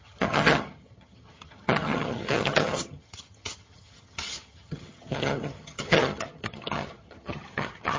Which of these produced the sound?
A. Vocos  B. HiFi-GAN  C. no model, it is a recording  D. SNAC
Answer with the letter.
B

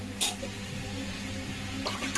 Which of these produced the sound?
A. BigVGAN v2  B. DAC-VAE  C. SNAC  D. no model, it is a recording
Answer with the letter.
D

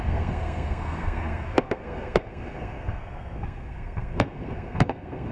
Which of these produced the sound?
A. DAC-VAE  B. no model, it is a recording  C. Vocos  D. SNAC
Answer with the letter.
D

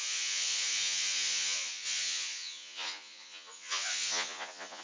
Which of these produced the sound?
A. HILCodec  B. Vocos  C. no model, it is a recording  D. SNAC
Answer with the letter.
B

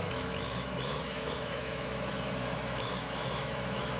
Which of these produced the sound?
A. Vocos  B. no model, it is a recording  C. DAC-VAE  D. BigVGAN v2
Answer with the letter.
C